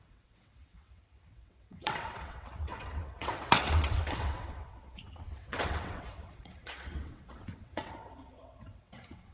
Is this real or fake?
fake